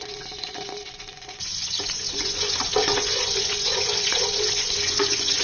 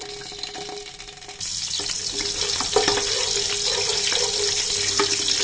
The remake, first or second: first